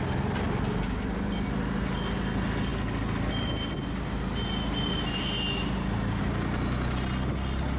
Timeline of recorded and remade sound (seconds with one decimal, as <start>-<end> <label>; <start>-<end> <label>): 0.0-7.8 recorded